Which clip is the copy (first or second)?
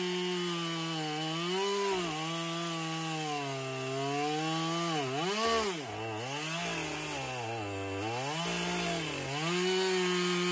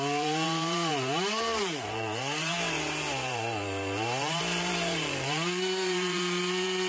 second